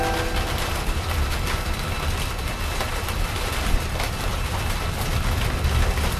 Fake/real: real